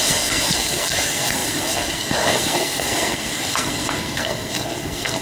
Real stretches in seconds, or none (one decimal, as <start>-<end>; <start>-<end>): none